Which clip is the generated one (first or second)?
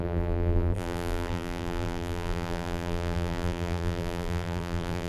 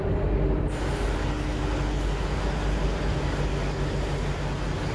first